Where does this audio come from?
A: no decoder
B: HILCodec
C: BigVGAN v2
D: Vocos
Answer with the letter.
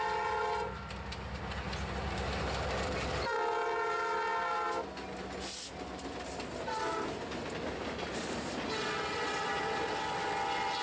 A